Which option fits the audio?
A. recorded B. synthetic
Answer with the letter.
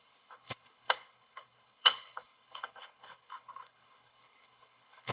B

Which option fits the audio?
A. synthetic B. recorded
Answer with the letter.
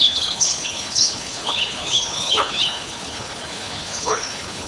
A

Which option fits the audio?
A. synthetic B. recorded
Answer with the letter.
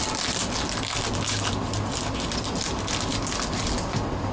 B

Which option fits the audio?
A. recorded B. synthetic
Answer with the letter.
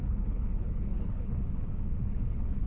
B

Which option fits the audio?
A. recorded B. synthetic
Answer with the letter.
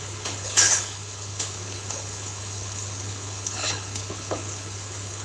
B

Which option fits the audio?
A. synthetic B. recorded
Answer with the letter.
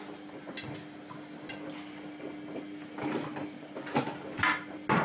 B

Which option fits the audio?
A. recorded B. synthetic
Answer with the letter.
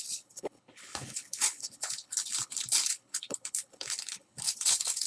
B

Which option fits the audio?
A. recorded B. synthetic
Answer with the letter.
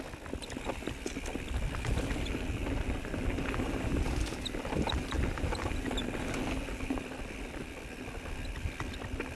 A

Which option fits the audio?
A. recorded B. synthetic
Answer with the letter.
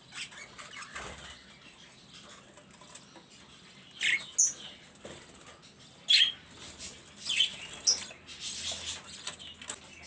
A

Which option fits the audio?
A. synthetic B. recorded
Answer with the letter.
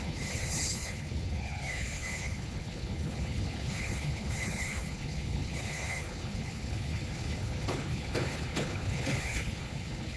A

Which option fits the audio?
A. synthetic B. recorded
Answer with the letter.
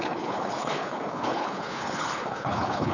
A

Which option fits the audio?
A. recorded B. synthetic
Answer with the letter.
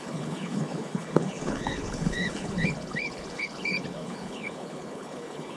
B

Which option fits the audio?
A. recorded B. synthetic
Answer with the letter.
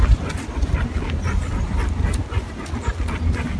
A